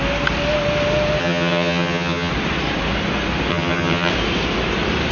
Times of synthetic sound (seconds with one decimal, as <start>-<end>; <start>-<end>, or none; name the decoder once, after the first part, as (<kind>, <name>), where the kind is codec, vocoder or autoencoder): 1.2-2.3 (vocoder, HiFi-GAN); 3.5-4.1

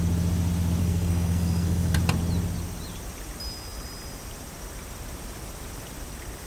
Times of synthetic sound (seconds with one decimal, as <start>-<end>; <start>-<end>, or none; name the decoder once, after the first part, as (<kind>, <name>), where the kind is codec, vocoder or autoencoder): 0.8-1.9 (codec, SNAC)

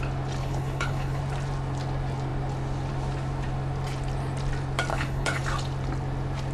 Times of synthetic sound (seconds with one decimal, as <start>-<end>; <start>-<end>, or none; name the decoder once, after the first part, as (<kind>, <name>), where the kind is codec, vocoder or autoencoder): 0.4-1.2 (codec, HILCodec); 4.9-5.4

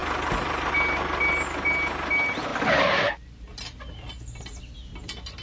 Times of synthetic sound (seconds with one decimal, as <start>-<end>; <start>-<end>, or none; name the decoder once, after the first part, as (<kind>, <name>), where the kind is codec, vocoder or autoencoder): none